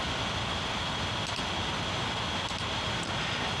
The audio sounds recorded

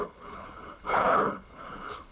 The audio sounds remade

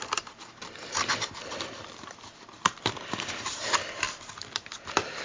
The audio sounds remade